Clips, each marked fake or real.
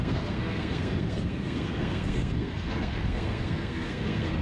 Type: fake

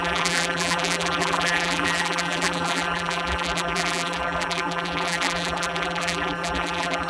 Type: fake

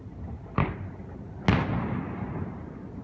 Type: real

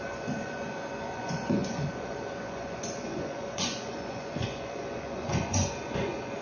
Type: fake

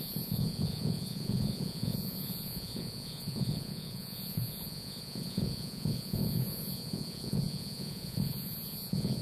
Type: fake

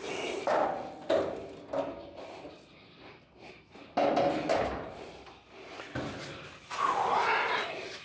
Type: real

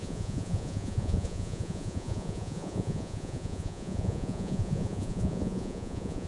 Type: fake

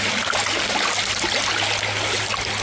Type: real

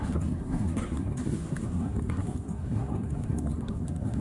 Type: fake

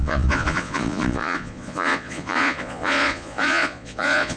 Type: fake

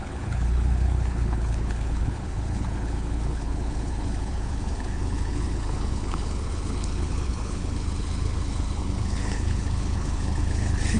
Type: fake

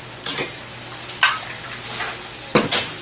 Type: real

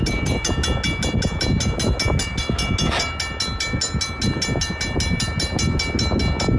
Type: real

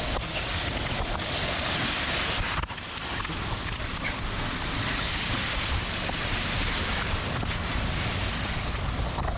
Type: real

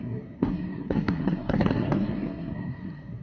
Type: fake